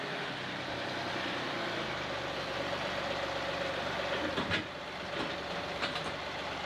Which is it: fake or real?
real